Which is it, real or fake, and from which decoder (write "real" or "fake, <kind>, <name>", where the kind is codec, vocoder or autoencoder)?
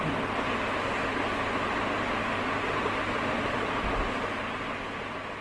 real